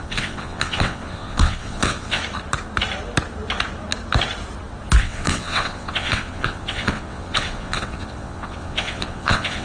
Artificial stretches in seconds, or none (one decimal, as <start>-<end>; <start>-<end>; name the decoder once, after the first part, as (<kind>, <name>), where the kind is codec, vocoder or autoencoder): 0.0-2.2 (vocoder, WaveNeXt); 5.0-9.6

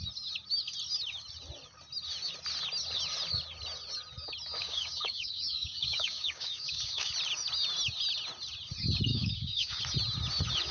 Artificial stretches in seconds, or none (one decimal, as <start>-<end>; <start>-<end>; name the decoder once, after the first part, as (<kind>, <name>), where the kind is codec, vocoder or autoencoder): 4.6-7.1 (codec, DAC); 9.1-9.8

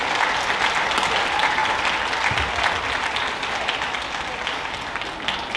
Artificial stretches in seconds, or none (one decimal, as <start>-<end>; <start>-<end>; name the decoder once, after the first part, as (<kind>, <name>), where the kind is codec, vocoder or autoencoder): none